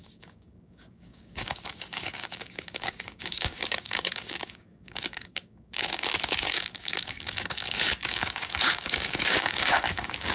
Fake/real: fake